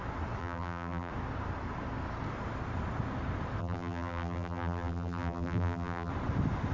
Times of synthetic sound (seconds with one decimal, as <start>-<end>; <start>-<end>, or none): 0.4-1.1; 3.6-6.1